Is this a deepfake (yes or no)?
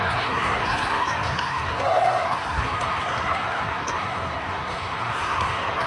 yes